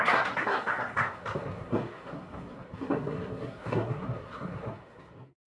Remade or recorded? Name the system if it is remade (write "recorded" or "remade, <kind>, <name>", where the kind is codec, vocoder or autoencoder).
remade, codec, SNAC